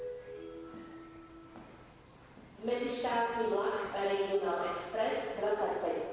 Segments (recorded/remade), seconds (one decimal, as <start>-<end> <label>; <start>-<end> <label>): 0.0-2.1 recorded; 2.1-5.6 remade; 5.6-6.1 recorded

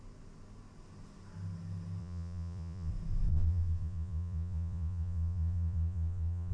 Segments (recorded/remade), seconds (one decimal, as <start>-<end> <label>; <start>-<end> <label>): 0.0-2.0 recorded; 2.0-2.9 remade; 2.9-3.3 recorded; 3.3-6.5 remade